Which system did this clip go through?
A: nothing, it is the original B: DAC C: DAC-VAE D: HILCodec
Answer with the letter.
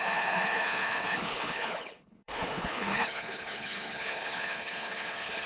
D